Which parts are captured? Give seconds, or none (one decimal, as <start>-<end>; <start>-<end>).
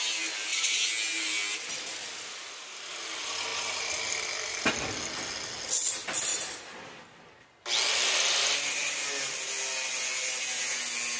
0.0-11.2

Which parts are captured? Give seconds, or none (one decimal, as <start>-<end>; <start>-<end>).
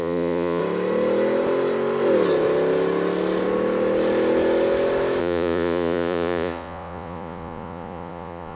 0.6-5.2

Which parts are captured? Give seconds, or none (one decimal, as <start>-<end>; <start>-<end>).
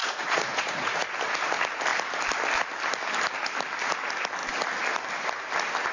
1.1-5.9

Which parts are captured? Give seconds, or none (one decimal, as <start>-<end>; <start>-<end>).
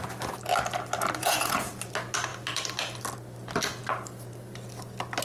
0.0-1.2; 1.7-5.2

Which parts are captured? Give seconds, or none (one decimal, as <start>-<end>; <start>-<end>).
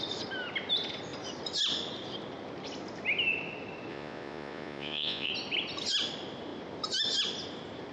0.0-3.9; 5.3-7.9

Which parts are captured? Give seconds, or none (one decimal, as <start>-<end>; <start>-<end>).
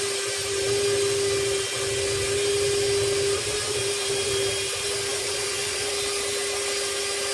0.0-5.1; 5.9-7.3